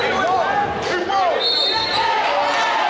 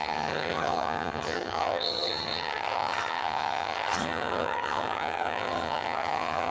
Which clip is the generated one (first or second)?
second